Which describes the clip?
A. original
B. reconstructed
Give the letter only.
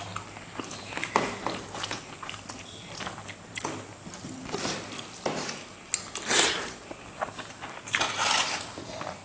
A